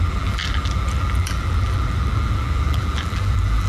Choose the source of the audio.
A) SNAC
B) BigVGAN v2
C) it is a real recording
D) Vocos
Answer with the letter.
B